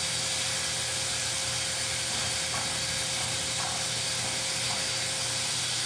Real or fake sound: real